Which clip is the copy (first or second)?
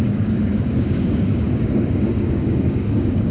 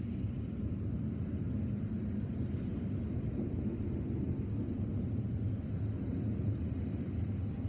first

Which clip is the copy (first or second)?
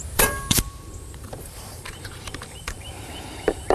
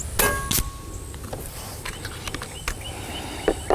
first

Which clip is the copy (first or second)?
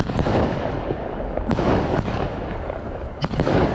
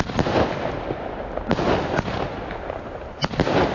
first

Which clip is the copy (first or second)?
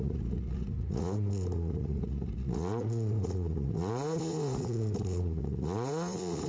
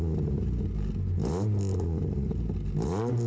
first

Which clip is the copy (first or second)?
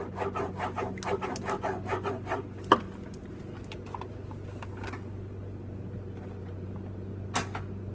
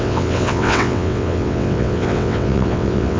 second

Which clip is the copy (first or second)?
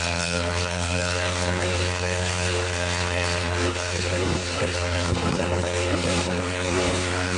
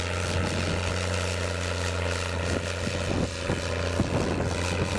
first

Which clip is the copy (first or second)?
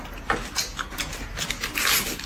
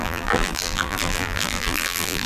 second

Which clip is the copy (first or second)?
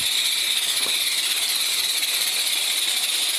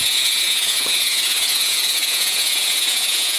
second